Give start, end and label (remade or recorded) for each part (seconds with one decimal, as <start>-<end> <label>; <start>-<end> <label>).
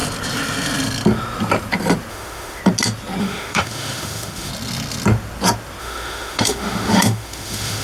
0.0-2.1 recorded; 2.1-2.6 remade; 2.6-3.2 recorded; 3.2-4.5 remade; 4.5-5.8 recorded; 5.8-7.8 remade